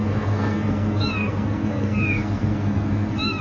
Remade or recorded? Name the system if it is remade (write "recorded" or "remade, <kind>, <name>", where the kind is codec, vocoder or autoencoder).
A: remade, codec, SNAC